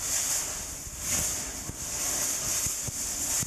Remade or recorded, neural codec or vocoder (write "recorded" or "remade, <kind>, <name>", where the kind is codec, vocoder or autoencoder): recorded